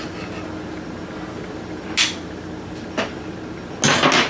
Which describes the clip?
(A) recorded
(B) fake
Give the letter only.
A